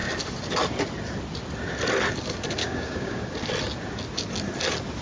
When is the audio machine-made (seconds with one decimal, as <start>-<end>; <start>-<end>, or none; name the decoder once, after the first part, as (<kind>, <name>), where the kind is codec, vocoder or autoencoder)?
2.6-3.2 (codec, DAC)